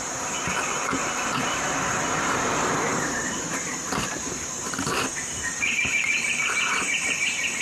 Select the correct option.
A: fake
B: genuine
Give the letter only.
A